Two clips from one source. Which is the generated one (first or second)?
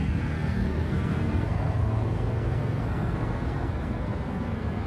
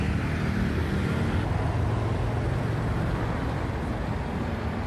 first